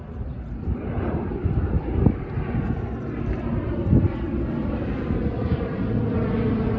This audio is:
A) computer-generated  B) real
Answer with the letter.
B